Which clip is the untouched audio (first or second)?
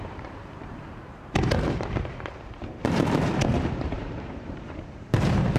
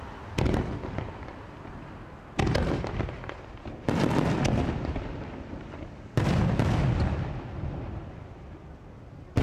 second